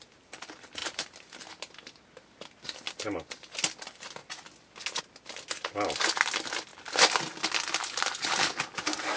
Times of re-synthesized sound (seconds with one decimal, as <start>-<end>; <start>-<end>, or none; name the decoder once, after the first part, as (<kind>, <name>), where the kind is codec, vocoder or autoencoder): none